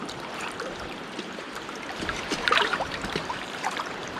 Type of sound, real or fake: fake